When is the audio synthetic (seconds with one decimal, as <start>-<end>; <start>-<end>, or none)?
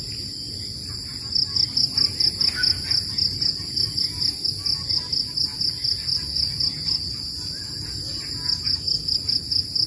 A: none